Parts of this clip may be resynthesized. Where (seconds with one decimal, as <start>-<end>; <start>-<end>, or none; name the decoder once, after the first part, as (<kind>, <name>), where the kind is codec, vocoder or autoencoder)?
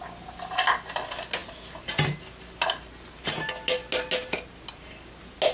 none